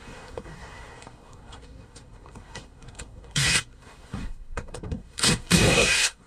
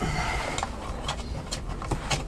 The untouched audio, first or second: second